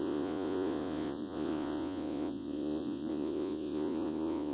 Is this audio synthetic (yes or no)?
yes